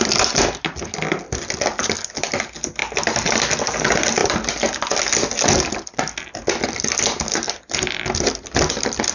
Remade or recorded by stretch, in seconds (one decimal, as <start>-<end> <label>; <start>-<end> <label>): 0.0-9.1 recorded